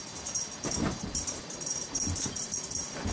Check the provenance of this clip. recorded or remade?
remade